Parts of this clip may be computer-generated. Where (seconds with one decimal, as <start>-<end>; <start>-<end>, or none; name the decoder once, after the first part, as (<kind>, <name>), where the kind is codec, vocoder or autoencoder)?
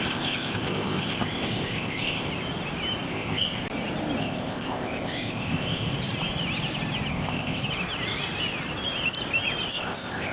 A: 0.0-2.3 (codec, ZipCodec); 3.1-3.6; 4.2-5.9; 7.1-7.6; 9.7-10.3